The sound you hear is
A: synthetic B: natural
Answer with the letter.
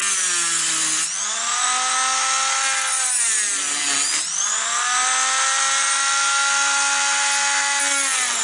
B